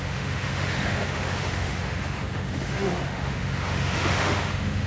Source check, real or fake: fake